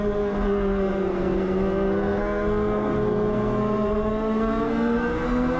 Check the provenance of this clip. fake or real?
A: fake